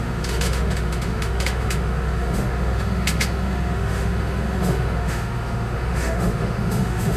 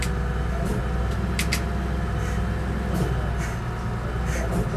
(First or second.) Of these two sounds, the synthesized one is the first